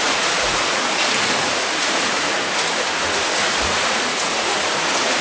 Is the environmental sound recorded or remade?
remade